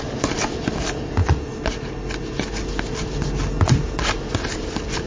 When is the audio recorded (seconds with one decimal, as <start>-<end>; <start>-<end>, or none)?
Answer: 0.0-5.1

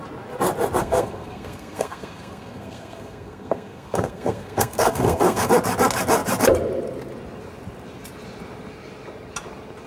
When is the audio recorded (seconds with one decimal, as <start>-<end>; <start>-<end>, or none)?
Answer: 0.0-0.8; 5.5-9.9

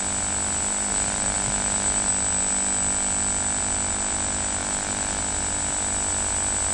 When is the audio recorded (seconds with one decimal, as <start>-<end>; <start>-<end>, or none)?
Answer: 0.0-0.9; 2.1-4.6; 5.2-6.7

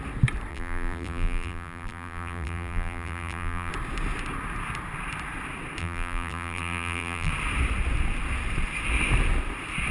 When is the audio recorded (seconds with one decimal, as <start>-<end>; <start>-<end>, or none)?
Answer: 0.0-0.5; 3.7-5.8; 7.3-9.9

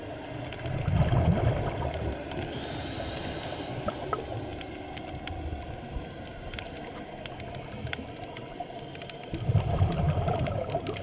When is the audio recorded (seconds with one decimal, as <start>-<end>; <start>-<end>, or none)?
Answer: 0.0-11.0

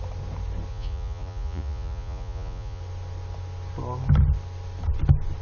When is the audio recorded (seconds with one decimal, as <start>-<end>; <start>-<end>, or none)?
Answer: 0.0-0.7; 2.8-5.4

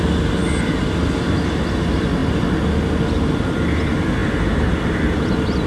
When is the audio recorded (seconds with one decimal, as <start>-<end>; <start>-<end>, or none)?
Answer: 0.0-5.7

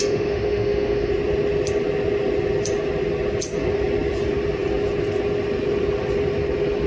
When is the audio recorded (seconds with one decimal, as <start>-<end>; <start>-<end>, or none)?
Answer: 1.1-6.9